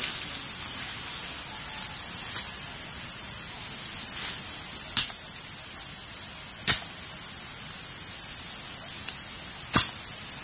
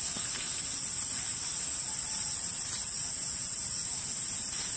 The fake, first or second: second